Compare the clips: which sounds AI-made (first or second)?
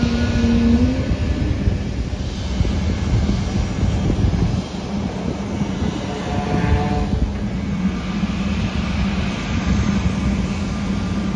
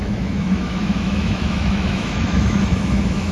second